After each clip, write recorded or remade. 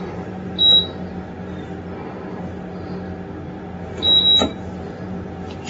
recorded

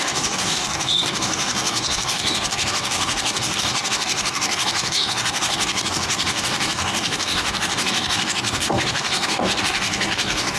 remade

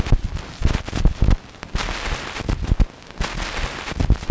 recorded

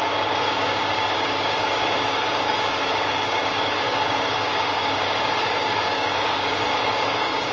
remade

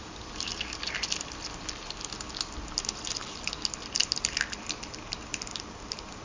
recorded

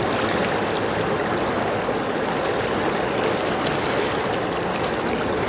recorded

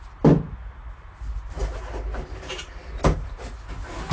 recorded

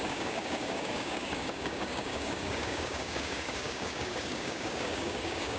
remade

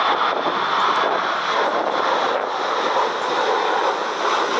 recorded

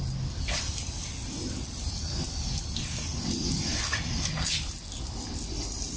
recorded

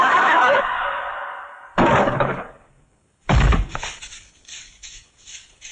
remade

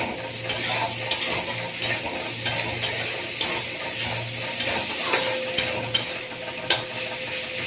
recorded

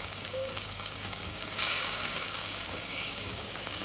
remade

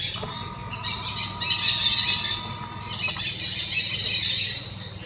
recorded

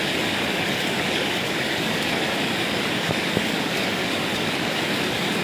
remade